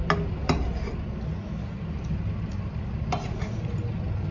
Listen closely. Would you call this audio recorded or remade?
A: recorded